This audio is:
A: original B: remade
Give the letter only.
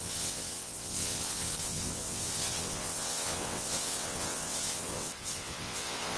B